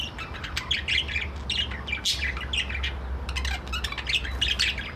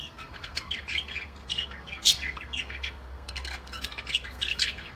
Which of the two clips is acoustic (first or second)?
first